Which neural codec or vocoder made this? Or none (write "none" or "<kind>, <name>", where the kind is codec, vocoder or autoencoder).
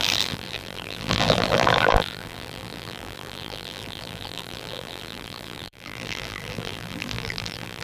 vocoder, BigVGAN v2